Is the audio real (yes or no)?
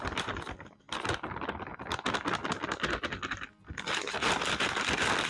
yes